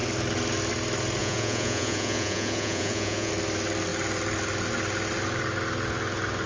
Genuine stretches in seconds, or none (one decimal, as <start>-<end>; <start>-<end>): 0.0-1.2; 3.3-6.5